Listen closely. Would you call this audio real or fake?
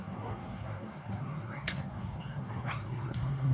fake